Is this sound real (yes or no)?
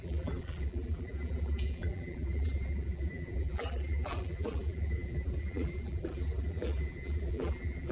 no